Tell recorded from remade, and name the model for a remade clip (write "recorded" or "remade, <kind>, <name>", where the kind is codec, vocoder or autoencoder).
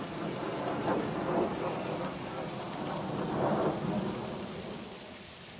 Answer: recorded